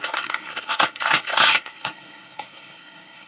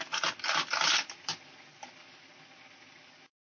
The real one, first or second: second